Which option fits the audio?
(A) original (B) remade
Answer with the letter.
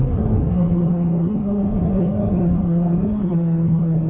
B